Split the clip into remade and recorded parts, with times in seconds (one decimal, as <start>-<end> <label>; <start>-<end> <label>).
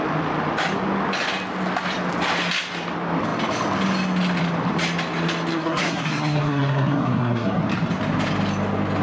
0.0-5.5 recorded; 5.5-7.6 remade; 7.6-9.0 recorded